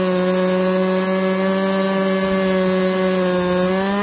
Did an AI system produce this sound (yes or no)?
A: no